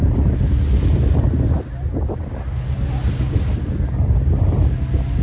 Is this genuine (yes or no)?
yes